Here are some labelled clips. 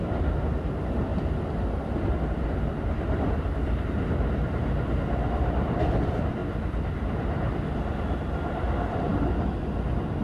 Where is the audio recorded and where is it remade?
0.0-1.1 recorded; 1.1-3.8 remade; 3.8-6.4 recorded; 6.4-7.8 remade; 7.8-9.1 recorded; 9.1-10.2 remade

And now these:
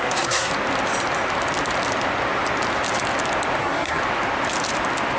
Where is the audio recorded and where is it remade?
0.0-0.5 remade; 0.5-3.6 recorded; 3.6-4.0 remade; 4.0-5.2 recorded

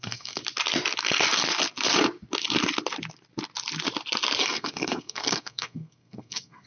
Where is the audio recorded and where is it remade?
0.0-0.4 remade; 0.4-4.4 recorded; 4.4-6.7 remade